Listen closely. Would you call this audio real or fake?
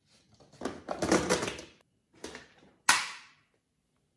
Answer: real